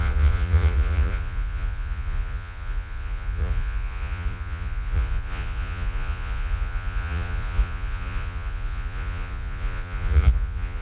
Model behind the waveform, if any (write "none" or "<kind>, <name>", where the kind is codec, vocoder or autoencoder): vocoder, Vocos